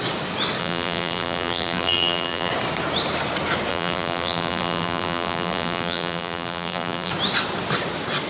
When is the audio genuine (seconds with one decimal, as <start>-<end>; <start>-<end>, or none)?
0.0-0.6; 2.5-3.7; 7.1-8.3